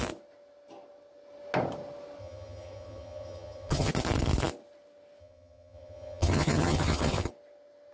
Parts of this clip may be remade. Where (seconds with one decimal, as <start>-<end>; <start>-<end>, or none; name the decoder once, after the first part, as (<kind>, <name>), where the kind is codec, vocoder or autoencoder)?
2.2-3.9 (vocoder, HiFi-GAN); 5.2-7.3